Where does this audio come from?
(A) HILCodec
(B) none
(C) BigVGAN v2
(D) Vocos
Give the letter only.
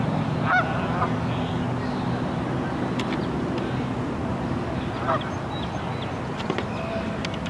B